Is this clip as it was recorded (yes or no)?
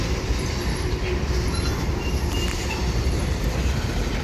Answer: no